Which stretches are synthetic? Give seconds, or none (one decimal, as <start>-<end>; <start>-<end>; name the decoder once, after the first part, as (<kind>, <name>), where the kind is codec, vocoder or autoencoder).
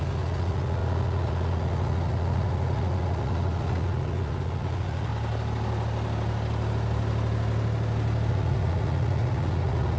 0.0-5.1 (vocoder, Vocos); 8.3-10.0